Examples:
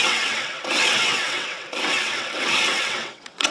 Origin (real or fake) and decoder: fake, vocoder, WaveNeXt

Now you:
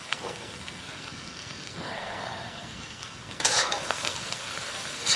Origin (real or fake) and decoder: fake, codec, SNAC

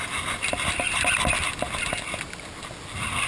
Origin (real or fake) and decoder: real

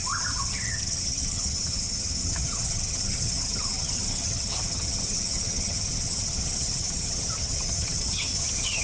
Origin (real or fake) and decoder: fake, vocoder, HiFi-GAN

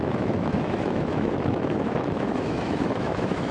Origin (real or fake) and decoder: fake, autoencoder, DAC-VAE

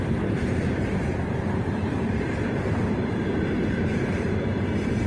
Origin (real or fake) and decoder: fake, vocoder, BigVGAN v2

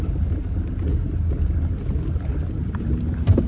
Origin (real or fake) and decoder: real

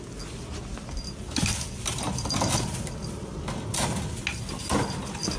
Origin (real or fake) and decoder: real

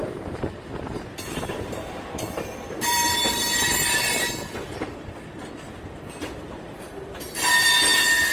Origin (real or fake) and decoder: fake, vocoder, BigVGAN v2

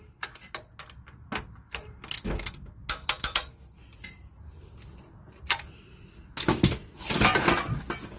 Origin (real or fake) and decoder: real